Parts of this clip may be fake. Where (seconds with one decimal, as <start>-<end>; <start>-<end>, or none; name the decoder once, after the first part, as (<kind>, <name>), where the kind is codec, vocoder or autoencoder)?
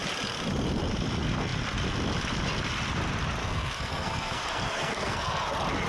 3.4-5.5 (codec, SNAC)